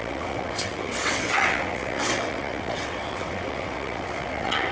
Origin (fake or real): fake